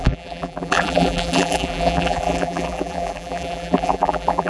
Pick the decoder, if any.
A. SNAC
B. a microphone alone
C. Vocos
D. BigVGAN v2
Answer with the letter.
D